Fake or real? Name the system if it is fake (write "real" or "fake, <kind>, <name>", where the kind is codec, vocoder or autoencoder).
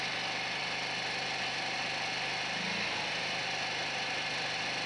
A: real